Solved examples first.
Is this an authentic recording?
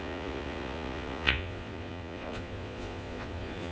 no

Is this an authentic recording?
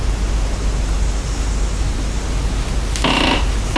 yes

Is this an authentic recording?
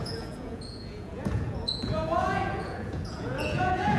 no